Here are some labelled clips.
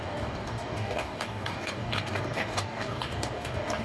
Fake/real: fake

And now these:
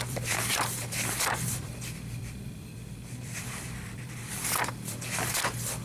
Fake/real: fake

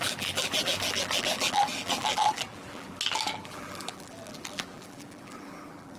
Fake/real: fake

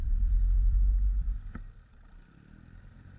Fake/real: fake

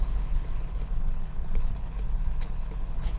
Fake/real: fake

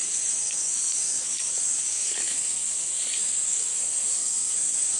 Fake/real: fake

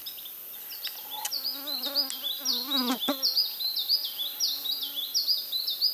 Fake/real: real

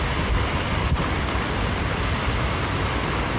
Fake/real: real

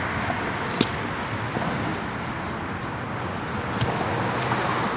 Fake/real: real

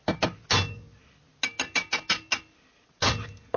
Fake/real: real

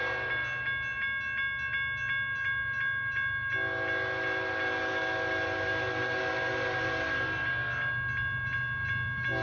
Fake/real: real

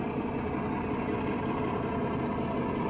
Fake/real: real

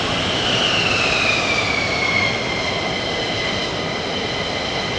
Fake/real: real